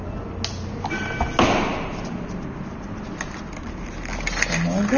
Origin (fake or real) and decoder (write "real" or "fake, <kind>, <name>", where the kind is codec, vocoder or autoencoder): real